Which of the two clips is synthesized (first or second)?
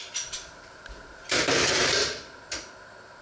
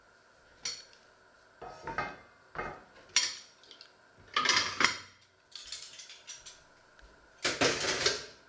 first